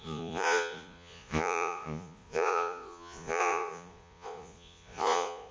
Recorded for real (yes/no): no